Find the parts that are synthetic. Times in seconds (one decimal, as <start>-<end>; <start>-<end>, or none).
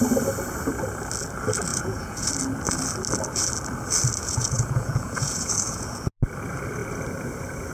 1.7-2.3; 4.2-6.1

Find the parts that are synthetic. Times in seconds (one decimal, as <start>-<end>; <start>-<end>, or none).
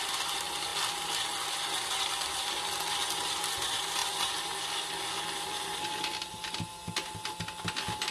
none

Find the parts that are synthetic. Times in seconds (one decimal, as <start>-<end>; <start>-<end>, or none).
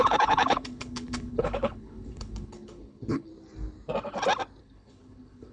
0.0-3.3; 4.6-5.5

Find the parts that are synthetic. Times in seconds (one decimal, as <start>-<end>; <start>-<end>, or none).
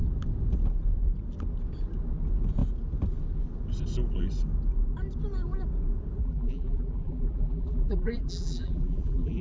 6.2-9.4